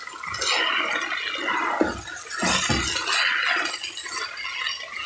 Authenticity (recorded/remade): recorded